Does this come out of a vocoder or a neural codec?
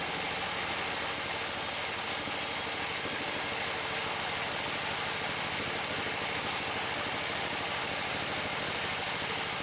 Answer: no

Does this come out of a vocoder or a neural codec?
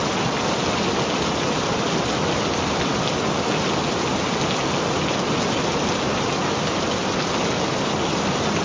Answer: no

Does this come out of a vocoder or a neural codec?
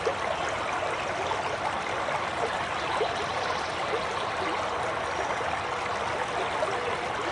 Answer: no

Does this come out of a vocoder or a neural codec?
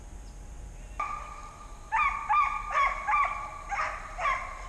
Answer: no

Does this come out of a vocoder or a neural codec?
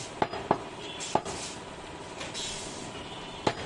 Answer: no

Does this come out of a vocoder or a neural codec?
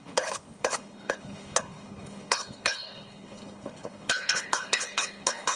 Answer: yes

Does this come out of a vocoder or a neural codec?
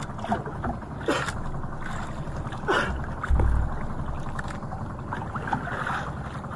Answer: no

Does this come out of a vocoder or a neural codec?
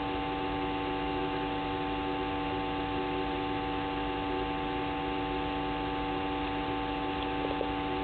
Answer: no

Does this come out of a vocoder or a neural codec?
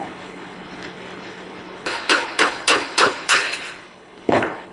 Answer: yes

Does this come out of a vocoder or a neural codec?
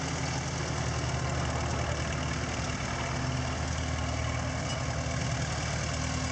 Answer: no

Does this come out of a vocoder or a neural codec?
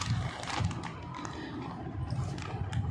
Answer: no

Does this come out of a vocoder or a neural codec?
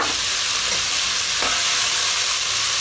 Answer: no